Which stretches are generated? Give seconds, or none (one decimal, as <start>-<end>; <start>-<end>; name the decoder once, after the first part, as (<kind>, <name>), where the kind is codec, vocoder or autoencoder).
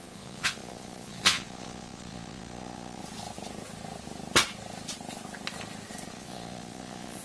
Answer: 0.0-3.0 (vocoder, Vocos); 6.1-7.2